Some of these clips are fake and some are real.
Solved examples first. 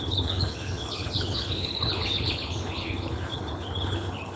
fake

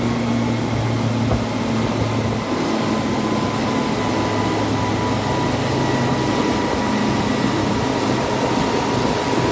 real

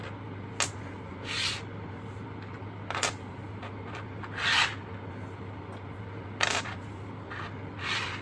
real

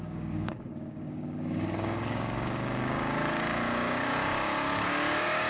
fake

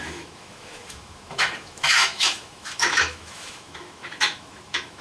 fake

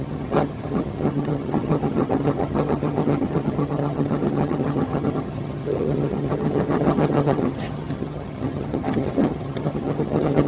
fake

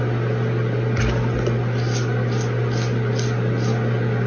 real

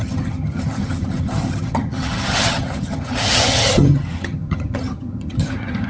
fake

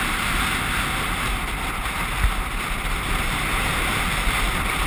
real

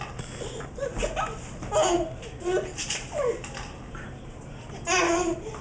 real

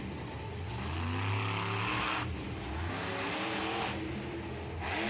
real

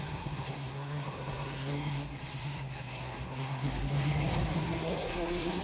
fake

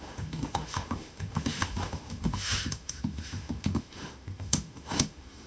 fake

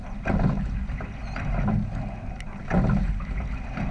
real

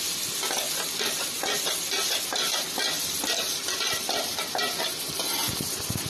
real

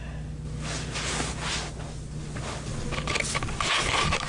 real